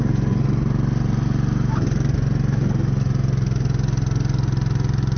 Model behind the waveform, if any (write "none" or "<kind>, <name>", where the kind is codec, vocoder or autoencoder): none